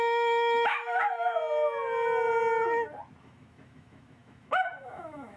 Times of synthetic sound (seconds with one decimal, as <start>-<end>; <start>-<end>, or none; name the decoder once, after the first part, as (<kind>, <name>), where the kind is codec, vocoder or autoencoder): 0.0-1.4 (autoencoder, DAC-VAE); 3.2-5.4